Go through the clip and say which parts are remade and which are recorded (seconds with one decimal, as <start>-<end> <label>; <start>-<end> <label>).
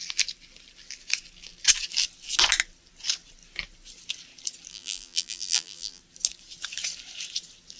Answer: 0.0-4.7 recorded; 4.7-6.0 remade; 6.0-7.8 recorded